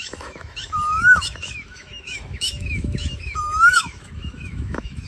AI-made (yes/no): yes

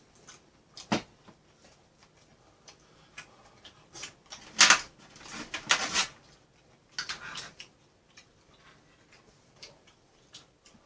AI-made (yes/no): no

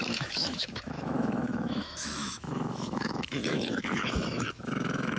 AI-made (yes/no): yes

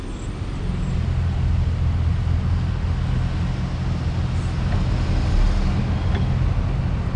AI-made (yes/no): no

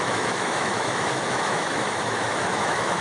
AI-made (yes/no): yes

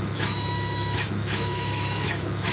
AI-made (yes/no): yes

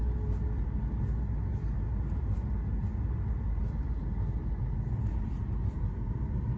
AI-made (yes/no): no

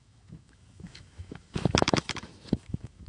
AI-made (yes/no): yes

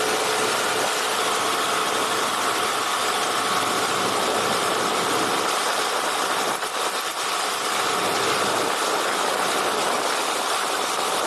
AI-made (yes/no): no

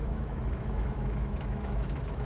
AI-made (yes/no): yes